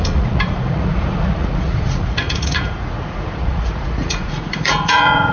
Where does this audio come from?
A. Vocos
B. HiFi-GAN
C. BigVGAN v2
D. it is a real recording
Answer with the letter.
A